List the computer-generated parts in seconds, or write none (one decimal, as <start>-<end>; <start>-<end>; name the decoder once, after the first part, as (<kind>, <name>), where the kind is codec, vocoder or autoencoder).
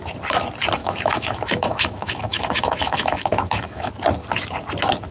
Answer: 0.8-3.9 (autoencoder, DAC-VAE)